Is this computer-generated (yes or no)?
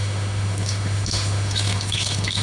yes